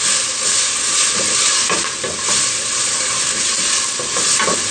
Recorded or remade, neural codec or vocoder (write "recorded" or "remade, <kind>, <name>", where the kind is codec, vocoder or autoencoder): recorded